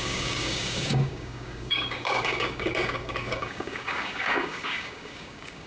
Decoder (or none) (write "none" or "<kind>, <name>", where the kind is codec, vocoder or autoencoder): codec, DAC